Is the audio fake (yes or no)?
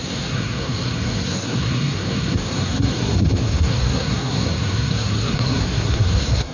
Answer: yes